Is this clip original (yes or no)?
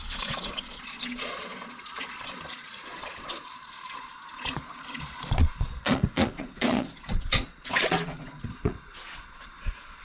no